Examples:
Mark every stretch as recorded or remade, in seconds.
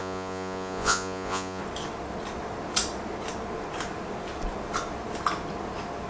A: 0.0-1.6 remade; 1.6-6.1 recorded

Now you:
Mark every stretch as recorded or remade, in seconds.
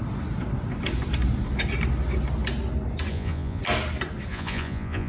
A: 0.0-3.1 recorded; 3.1-3.6 remade; 3.6-4.3 recorded; 4.3-5.1 remade